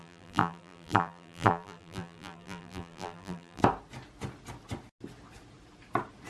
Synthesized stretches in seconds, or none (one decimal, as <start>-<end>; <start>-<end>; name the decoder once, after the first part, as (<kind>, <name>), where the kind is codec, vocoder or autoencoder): 0.0-3.6 (vocoder, BigVGAN v2)

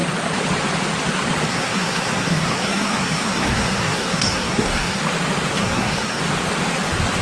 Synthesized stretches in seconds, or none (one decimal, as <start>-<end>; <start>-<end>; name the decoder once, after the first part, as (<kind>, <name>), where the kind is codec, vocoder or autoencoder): 1.5-5.0 (codec, SNAC); 5.6-6.2

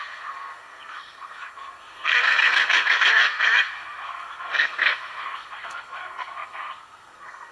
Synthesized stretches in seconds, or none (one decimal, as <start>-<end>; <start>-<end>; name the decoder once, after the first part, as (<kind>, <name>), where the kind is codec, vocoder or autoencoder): 0.0-7.5 (codec, SNAC)

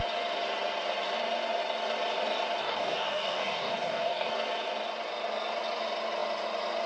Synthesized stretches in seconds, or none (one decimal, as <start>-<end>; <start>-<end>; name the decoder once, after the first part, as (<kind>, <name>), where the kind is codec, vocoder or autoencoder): 2.6-4.3 (codec, DAC)

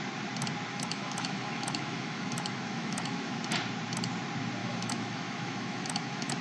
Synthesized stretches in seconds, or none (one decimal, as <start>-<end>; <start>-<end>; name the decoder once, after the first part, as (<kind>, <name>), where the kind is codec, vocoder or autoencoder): 0.7-3.4 (autoencoder, DAC-VAE); 4.6-6.4

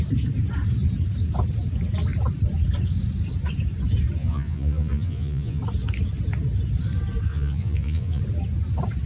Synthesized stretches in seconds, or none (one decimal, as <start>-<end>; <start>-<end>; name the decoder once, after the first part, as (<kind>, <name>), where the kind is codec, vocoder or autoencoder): 4.2-5.6 (vocoder, Vocos); 7.3-8.2

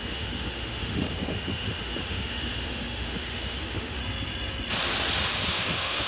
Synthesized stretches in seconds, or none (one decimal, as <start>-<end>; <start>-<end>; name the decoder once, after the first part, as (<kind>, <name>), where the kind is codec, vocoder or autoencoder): 0.0-4.0 (autoencoder, DAC-VAE); 5.5-6.1

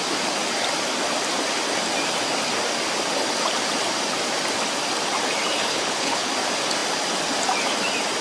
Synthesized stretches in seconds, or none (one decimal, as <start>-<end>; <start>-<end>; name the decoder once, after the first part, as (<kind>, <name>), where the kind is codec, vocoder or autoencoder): 5.7-6.3 (codec, HILCodec)